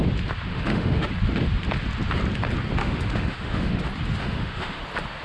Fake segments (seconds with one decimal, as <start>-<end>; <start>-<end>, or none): 0.5-1.1; 2.8-3.8; 4.2-4.8